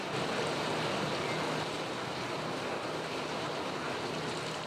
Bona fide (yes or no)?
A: yes